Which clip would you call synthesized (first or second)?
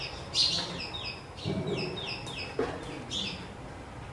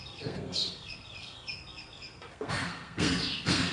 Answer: second